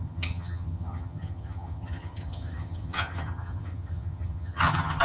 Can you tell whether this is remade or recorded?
remade